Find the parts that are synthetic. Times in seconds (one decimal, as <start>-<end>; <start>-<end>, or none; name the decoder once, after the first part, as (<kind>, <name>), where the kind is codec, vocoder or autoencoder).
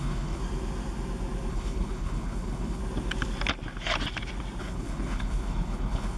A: 0.0-0.4 (codec, HILCodec); 1.5-2.8; 4.6-6.2